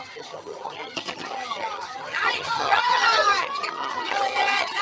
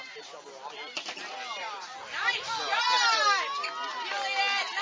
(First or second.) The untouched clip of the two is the second